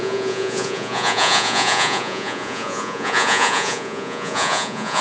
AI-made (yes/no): yes